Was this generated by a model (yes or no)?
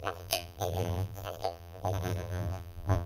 yes